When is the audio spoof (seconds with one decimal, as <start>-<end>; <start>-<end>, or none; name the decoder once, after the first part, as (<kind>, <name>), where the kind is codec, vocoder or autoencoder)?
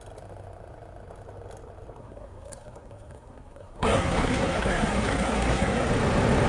2.0-5.9 (codec, SNAC)